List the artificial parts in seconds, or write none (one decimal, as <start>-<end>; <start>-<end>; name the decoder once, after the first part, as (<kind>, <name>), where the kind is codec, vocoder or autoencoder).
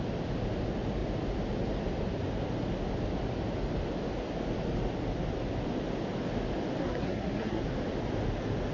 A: 6.8-7.6 (codec, SNAC)